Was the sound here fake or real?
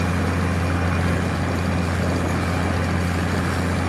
real